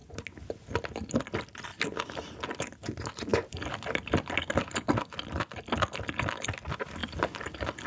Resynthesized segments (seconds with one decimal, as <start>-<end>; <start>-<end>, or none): none